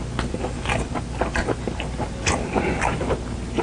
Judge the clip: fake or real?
real